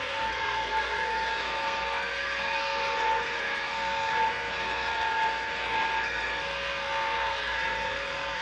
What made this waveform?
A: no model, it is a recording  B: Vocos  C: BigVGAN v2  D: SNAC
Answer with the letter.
D